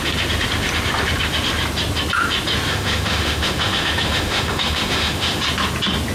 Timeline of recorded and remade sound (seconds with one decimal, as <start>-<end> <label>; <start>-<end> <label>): 0.0-2.7 recorded; 2.7-5.4 remade; 5.4-6.1 recorded